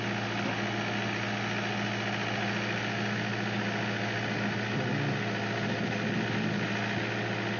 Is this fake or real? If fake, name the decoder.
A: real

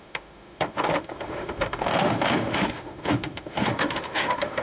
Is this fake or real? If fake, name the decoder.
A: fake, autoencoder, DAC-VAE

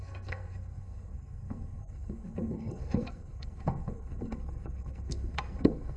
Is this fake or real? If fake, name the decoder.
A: fake, codec, SNAC